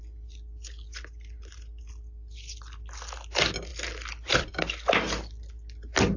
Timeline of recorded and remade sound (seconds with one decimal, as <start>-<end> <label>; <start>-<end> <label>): 0.0-6.2 recorded